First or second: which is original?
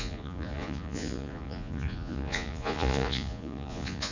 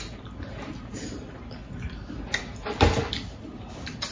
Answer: second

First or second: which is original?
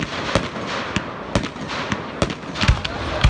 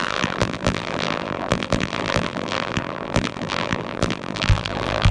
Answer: first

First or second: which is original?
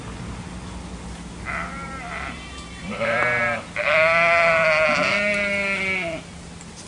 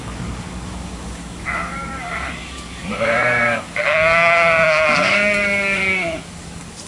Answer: first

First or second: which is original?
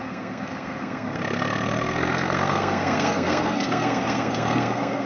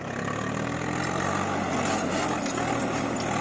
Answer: second